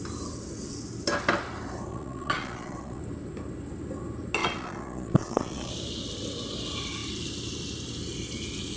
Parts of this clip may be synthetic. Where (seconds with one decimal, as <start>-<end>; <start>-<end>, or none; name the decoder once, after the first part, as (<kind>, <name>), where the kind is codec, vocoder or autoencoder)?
1.9-3.0 (vocoder, Vocos); 4.4-5.7